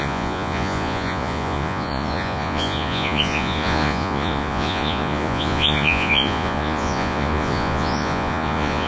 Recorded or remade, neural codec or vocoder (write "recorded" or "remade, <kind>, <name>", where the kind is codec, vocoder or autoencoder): remade, vocoder, Vocos